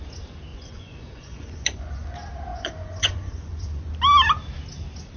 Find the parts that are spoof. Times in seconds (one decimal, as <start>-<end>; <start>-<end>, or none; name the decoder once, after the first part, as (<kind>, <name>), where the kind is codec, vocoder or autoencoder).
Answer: 0.5-1.9 (vocoder, Vocos); 2.5-3.9